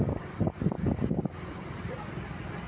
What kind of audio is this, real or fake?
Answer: real